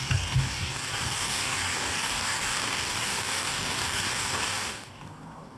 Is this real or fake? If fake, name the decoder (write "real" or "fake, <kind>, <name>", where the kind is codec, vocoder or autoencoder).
fake, codec, DAC